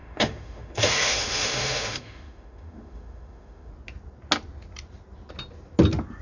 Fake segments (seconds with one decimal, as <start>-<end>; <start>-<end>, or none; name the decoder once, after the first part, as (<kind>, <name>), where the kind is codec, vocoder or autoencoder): 0.0-3.7 (autoencoder, DAC-VAE)